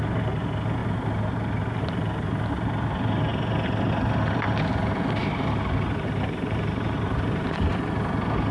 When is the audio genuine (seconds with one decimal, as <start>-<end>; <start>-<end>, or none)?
0.0-5.2; 7.7-8.5